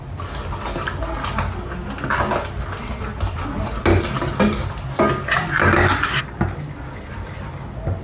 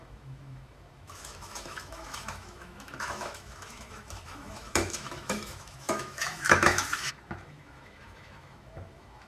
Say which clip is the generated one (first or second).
second